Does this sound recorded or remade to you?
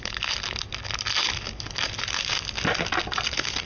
recorded